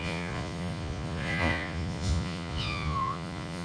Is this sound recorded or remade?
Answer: remade